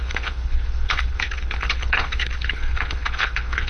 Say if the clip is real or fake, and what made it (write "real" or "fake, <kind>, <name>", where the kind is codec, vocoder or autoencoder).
fake, codec, HILCodec